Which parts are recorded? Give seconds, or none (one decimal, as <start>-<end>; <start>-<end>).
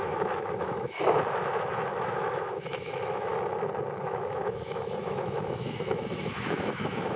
3.3-4.0